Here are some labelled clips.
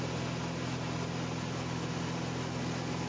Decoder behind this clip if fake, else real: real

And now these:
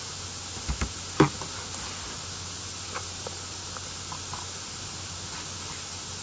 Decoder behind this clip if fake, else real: real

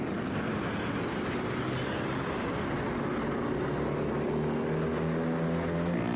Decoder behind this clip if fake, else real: real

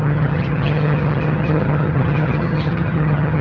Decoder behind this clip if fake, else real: fake, vocoder, HiFi-GAN